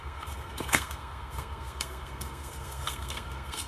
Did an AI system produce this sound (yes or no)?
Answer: yes